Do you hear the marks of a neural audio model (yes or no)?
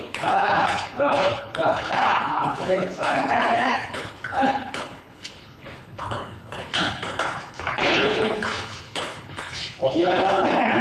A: yes